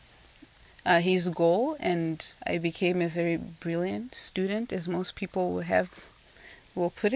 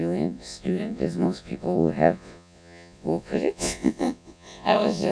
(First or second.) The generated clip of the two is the second